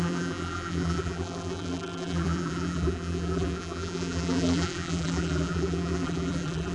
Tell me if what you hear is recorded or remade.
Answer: remade